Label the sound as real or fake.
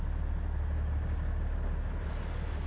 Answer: real